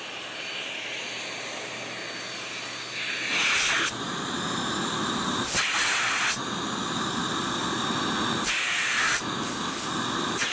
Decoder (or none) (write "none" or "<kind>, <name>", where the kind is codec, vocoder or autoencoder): none